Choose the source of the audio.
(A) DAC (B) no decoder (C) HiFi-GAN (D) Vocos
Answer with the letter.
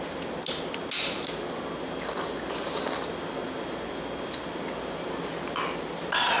B